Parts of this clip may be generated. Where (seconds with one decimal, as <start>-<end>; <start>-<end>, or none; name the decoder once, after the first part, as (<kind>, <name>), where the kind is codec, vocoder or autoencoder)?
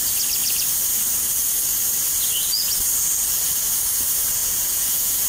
4.4-5.3 (vocoder, Vocos)